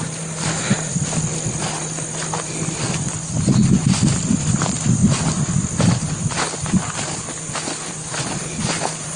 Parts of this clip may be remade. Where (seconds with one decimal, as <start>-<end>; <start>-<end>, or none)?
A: none